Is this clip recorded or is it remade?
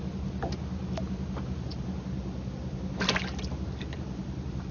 recorded